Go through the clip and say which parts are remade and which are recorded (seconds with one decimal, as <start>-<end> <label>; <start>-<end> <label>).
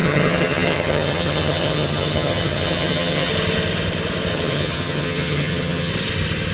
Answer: 0.0-3.3 remade; 3.3-4.3 recorded; 4.3-5.9 remade; 5.9-6.5 recorded